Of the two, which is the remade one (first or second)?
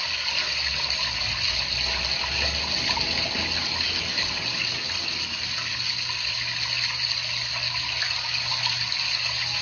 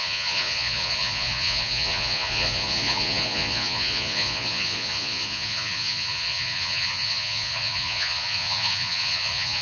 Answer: second